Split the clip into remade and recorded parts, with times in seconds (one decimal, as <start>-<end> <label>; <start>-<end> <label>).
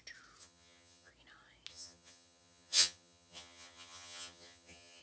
0.0-0.4 recorded; 0.4-1.1 remade; 1.1-1.7 recorded; 1.7-5.0 remade